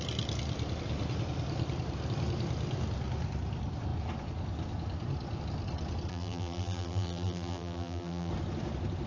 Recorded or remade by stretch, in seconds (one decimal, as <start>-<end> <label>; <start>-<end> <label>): 0.0-6.1 recorded; 6.1-8.3 remade; 8.3-9.1 recorded